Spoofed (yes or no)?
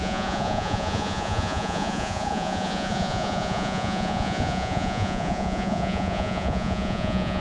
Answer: yes